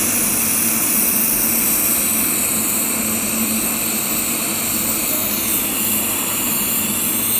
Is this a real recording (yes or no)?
yes